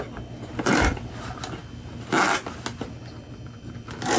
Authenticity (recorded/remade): recorded